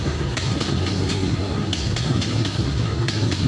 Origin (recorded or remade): remade